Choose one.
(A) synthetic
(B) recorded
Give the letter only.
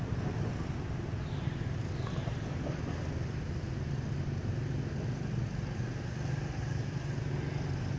B